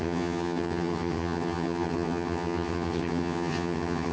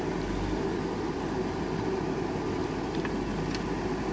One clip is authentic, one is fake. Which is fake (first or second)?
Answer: first